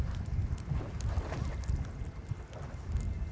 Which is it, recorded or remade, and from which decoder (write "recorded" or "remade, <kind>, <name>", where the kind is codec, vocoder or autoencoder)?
recorded